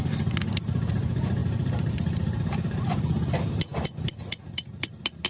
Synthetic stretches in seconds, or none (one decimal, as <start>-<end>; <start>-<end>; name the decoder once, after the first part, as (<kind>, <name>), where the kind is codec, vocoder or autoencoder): 1.4-2.5 (vocoder, BigVGAN v2)